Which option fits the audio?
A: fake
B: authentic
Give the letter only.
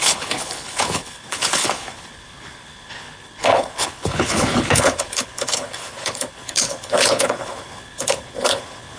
A